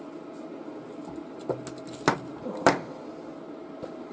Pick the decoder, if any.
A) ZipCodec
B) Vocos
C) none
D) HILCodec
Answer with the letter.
C